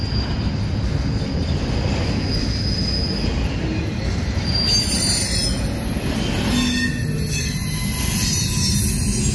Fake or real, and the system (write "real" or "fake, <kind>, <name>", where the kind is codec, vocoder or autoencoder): real